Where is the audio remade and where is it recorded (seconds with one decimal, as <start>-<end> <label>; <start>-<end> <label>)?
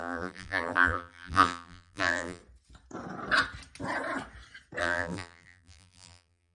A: 0.0-2.4 remade; 2.4-4.8 recorded; 4.8-6.5 remade